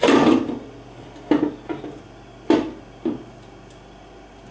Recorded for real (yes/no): yes